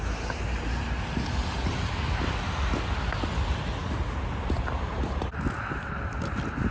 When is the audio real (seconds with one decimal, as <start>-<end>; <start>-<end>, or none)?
0.0-6.7